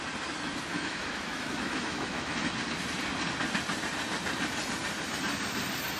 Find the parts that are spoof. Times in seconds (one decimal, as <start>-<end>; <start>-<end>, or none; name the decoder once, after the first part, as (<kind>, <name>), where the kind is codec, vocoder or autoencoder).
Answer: 0.7-2.5 (autoencoder, DAC-VAE)